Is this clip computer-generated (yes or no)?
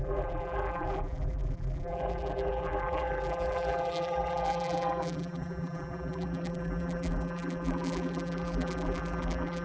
yes